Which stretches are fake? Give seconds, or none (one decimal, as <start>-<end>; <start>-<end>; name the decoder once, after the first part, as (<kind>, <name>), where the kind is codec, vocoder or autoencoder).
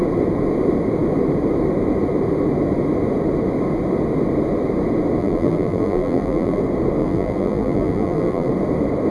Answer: 5.2-6.6 (vocoder, BigVGAN v2); 7.0-8.5